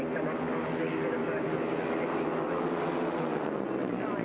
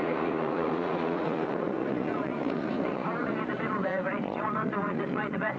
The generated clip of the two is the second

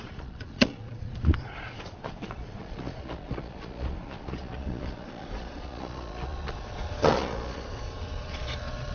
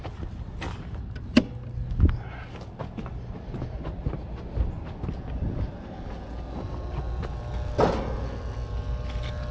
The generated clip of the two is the first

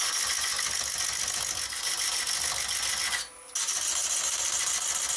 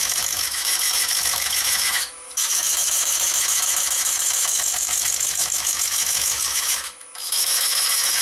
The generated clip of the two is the second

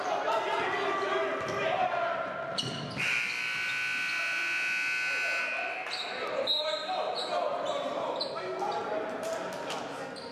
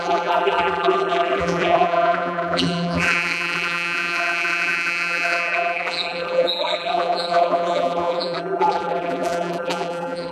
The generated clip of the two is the second